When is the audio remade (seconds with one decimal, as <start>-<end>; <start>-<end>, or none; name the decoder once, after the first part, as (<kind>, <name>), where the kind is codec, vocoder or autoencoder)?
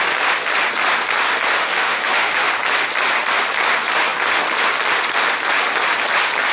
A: 1.6-2.5 (autoencoder, DAC-VAE)